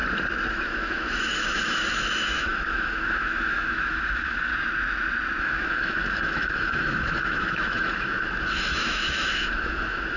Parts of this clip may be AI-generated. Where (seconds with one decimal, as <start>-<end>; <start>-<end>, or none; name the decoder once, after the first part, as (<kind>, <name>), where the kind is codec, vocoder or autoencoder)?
0.5-4.5 (autoencoder, DAC-VAE); 5.4-10.2